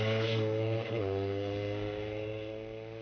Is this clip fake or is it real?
fake